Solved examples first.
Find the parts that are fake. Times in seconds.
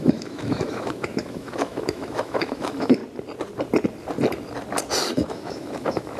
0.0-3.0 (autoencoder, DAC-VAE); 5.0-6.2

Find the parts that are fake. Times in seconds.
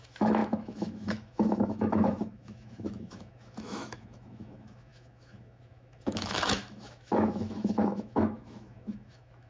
0.0-9.5 (autoencoder, DAC-VAE)